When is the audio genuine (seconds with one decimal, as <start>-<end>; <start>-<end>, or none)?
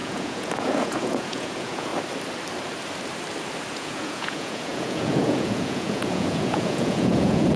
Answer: 1.9-3.7